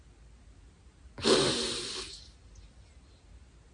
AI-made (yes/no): no